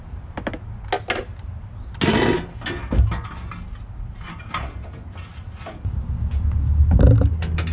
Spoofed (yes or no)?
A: no